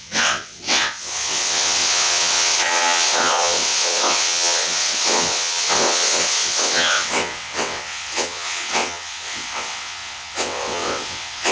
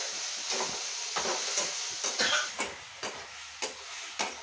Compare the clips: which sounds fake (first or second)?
first